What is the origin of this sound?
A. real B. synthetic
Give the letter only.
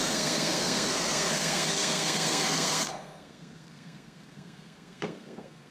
B